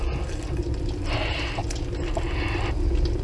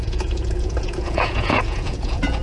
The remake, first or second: second